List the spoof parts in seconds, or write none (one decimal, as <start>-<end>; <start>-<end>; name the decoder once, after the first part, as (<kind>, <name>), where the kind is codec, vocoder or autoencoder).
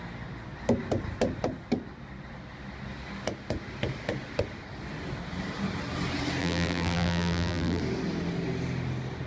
6.4-7.8 (vocoder, BigVGAN v2)